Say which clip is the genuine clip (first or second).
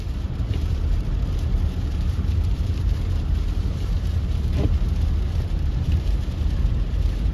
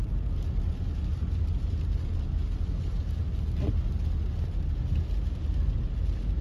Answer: second